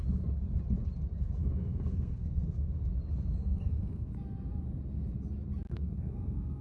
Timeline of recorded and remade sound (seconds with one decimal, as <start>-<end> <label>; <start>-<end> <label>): 0.0-1.4 recorded; 1.4-2.7 remade; 2.7-3.4 recorded; 3.4-4.1 remade; 4.1-5.7 recorded; 5.7-6.6 remade